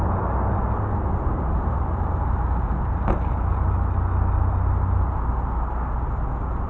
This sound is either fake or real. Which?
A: real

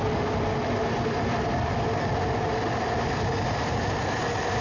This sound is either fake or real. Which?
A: real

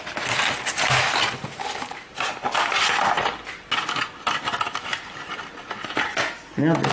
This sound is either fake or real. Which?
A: real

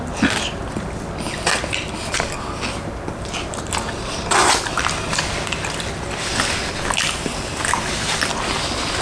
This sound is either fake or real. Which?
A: real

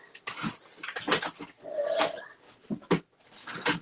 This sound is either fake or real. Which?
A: real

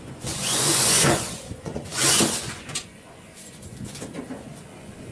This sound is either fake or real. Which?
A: fake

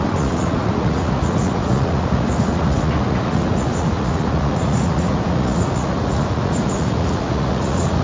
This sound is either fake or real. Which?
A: fake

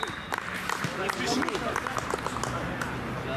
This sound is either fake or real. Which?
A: real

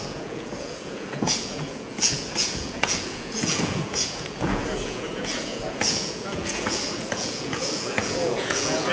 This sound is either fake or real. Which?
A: fake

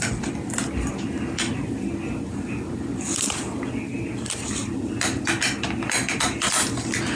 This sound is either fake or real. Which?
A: real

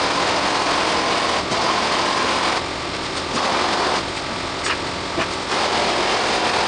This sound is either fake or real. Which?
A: real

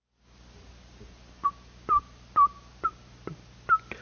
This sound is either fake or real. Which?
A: real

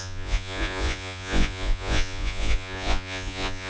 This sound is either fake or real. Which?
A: fake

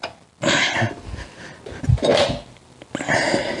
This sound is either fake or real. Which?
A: real